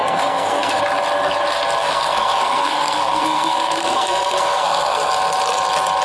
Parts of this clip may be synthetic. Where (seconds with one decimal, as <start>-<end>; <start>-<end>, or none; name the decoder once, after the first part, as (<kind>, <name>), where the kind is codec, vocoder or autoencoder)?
0.0-0.8 (codec, SNAC); 1.8-5.1